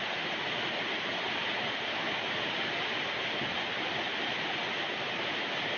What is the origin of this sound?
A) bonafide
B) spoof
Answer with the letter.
A